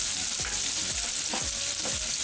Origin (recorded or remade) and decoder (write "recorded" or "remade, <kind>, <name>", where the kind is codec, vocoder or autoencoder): recorded